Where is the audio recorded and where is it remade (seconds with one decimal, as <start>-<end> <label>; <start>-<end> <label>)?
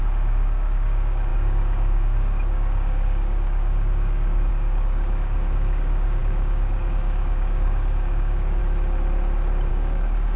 0.0-8.6 remade; 8.6-9.7 recorded; 9.7-10.4 remade